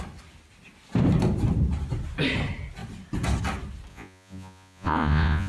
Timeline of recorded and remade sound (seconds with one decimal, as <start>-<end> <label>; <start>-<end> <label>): 0.0-3.9 recorded; 3.9-5.5 remade